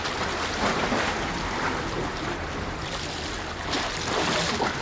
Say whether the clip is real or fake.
real